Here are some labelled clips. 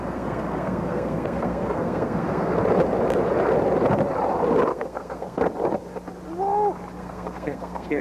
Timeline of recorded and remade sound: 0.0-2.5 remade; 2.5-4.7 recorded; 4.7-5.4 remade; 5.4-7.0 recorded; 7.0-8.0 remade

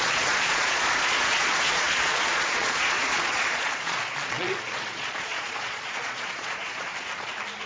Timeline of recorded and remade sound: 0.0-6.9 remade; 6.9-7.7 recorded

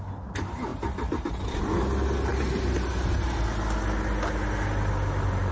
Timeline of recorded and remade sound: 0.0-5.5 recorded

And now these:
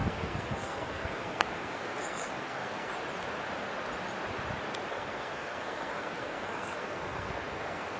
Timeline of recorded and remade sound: 0.0-2.9 remade; 2.9-4.9 recorded; 4.9-8.0 remade

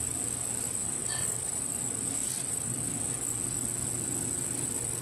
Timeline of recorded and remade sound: 0.0-0.8 recorded; 0.8-1.8 remade; 1.8-2.2 recorded; 2.2-3.0 remade; 3.0-5.0 recorded

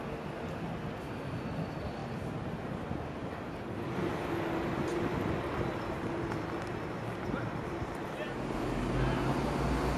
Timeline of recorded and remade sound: 0.0-10.0 recorded